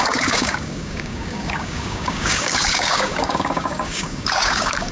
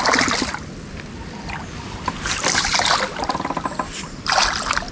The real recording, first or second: second